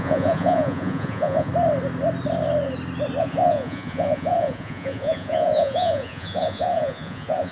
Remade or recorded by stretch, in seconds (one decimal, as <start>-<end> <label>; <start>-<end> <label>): 0.0-1.5 remade; 1.5-3.2 recorded; 3.2-7.5 remade